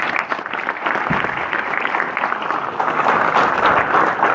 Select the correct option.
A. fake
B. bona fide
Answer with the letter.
B